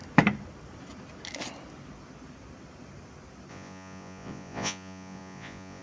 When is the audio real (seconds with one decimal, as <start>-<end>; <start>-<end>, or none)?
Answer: 0.0-3.5